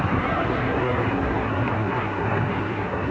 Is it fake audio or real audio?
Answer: fake